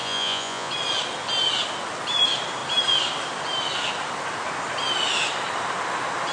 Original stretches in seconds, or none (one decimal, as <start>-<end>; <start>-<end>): 0.7-6.3